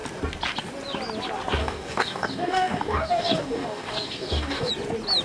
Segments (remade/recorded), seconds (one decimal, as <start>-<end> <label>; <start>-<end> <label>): 0.0-1.6 recorded; 1.6-4.7 remade; 4.7-5.2 recorded